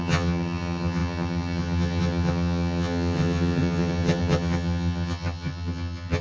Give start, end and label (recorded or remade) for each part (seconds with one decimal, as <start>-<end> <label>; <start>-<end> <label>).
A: 0.0-6.2 remade